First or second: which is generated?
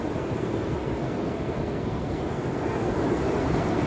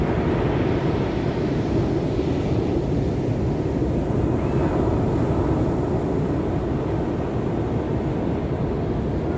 first